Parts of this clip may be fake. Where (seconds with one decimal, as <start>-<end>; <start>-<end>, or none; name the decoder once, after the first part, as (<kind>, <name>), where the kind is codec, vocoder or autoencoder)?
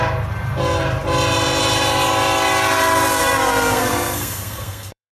3.2-5.1 (codec, SNAC)